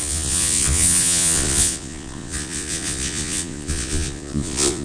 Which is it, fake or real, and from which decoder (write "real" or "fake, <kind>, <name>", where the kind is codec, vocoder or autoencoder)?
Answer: fake, vocoder, Vocos